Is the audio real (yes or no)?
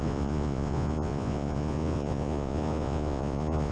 no